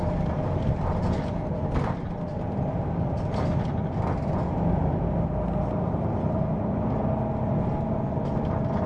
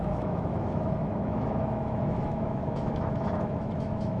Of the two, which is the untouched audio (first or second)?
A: first